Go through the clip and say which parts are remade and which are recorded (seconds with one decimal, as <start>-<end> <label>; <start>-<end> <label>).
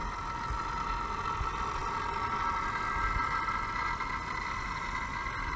0.0-5.6 recorded